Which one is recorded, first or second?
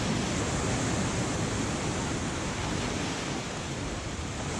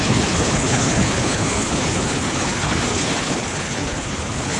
first